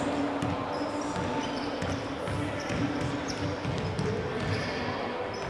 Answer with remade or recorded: recorded